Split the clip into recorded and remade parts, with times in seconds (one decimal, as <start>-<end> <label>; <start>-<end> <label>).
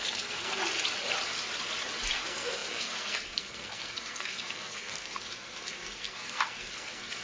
0.0-0.6 remade; 0.6-2.1 recorded; 2.1-7.2 remade